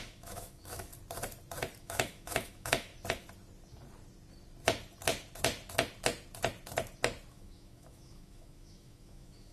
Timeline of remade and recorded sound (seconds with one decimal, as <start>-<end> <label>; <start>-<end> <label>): 0.0-0.9 remade; 0.9-1.8 recorded; 1.8-2.9 remade; 2.9-7.3 recorded; 7.3-9.5 remade